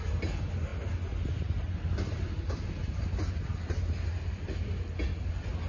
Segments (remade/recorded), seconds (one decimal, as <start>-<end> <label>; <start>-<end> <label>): 0.0-5.7 recorded